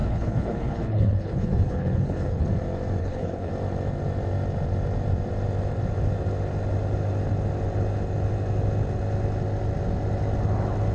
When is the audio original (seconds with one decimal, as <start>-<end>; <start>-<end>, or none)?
2.5-3.0; 3.5-10.9